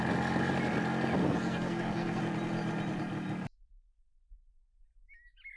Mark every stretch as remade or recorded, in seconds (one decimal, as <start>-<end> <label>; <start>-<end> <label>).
0.0-1.2 recorded; 1.2-2.2 remade; 2.2-5.6 recorded